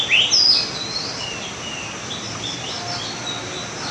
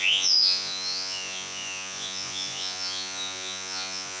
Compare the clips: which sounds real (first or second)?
first